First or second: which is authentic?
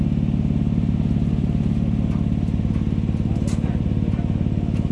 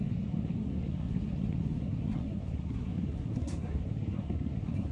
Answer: first